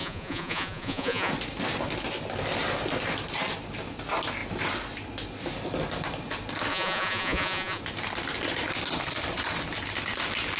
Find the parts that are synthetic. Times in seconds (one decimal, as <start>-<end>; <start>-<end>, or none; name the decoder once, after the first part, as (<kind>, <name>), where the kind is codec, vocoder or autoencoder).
0.0-1.3 (vocoder, Vocos); 6.7-7.8